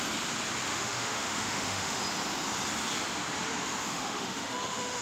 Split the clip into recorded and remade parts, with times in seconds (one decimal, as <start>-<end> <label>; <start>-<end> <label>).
0.0-0.7 recorded; 0.7-2.0 remade; 2.0-3.8 recorded; 3.8-5.0 remade